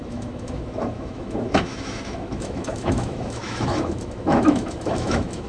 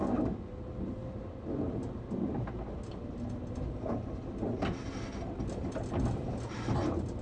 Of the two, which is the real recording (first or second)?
second